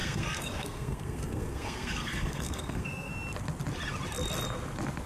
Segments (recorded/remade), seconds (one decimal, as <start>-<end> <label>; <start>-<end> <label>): 0.0-3.1 remade; 3.1-5.1 recorded